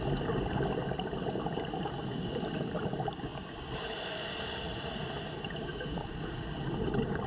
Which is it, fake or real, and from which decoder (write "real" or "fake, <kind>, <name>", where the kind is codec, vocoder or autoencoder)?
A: real